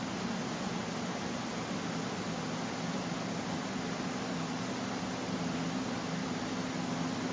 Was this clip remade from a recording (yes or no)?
no